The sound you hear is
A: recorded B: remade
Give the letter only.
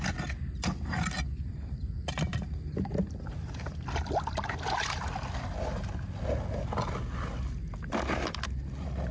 A